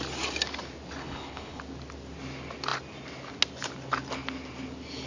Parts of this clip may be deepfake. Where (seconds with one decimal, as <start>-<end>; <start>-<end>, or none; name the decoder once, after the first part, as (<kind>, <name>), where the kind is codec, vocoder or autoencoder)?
1.0-1.6 (codec, HILCodec)